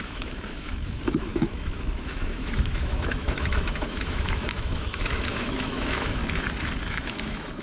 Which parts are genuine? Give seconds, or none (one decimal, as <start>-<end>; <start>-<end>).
6.2-6.9